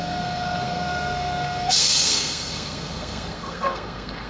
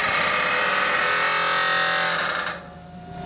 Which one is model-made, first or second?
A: first